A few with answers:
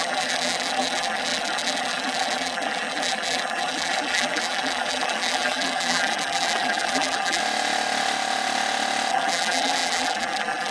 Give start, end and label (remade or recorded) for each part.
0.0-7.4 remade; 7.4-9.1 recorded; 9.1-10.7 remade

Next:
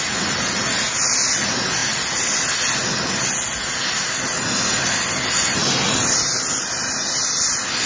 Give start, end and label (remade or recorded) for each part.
0.0-7.9 recorded

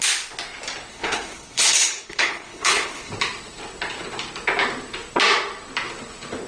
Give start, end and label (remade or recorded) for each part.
0.0-0.9 recorded; 0.9-3.1 remade; 3.1-6.5 recorded

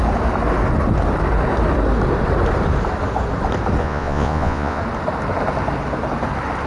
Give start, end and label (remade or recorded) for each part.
0.0-3.8 recorded; 3.8-4.8 remade; 4.8-6.7 recorded